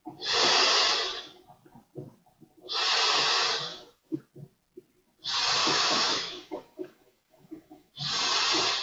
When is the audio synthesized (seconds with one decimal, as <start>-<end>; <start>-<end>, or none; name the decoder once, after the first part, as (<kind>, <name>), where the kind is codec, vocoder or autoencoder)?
3.7-4.2 (autoencoder, DAC-VAE); 5.6-7.9